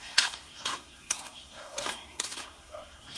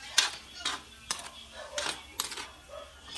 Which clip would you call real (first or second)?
second